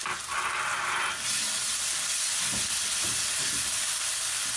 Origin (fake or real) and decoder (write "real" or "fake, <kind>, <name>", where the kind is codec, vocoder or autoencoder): real